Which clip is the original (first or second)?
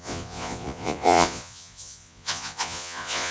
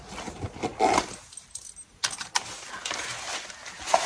second